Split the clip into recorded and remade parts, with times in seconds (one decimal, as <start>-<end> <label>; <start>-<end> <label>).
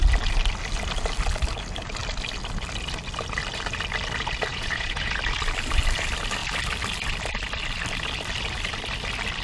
0.0-4.5 recorded; 4.5-5.2 remade; 5.2-9.4 recorded